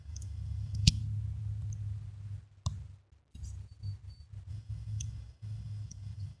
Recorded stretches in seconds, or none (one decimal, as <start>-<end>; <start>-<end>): 1.0-4.5

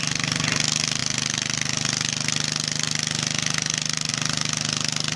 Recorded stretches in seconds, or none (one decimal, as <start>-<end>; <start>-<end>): 0.0-5.2

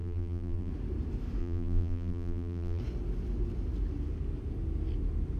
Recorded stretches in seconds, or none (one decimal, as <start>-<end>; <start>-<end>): 0.7-1.4; 2.8-5.4